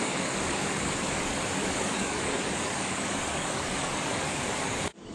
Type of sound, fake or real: fake